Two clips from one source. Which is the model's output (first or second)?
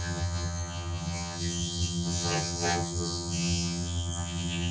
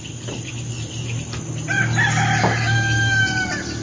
first